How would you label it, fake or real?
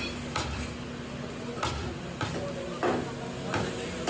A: real